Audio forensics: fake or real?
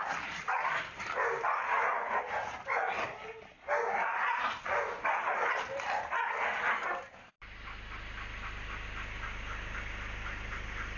real